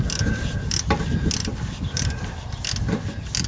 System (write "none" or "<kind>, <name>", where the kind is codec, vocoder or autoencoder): none